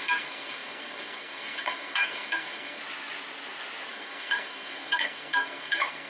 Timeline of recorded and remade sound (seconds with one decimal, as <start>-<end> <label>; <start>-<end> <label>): 0.0-2.8 remade; 2.8-3.9 recorded; 3.9-6.1 remade